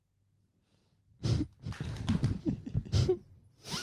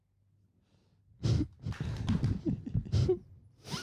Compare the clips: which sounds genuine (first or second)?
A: second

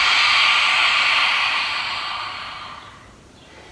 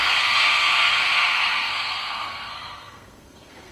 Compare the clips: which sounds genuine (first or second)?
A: first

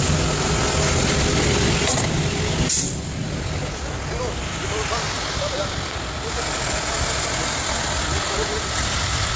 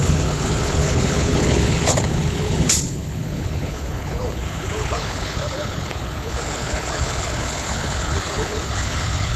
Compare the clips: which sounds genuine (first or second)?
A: first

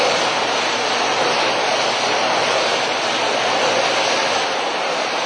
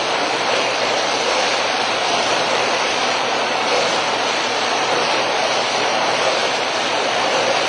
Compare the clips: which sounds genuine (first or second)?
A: first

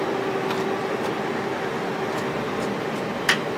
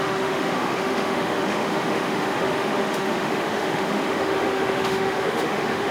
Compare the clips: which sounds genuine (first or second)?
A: first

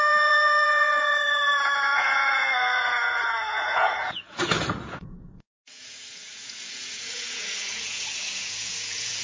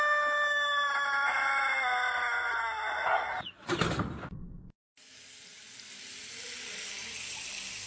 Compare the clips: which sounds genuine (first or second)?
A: second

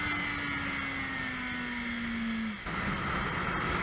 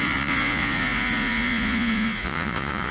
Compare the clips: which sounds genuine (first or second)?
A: first